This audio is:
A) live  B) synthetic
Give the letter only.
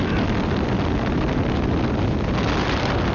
B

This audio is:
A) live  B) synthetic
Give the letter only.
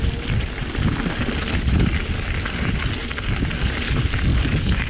A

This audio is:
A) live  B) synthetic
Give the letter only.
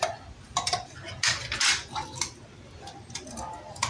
A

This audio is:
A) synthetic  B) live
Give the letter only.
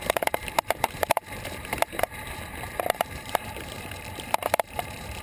A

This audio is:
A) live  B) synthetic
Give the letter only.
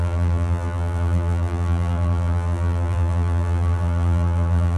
B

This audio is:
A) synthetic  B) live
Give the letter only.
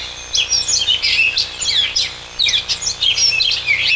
B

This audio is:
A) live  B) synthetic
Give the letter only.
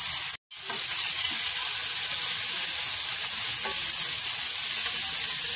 A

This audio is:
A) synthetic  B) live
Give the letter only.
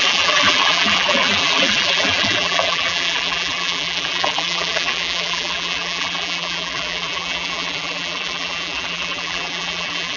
A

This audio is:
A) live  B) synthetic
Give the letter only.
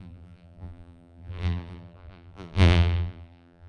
B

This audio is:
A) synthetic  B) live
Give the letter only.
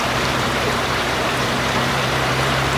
A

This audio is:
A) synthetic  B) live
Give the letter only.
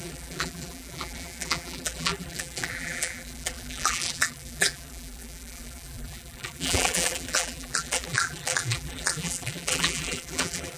A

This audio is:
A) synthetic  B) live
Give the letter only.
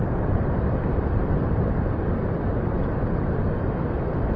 A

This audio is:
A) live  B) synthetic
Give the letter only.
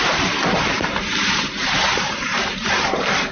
B